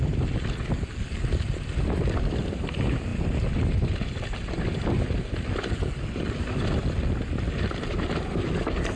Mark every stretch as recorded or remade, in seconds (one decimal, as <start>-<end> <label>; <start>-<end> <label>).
0.0-9.0 recorded

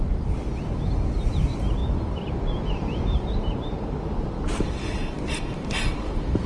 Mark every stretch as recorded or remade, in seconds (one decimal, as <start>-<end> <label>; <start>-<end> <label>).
0.0-6.5 recorded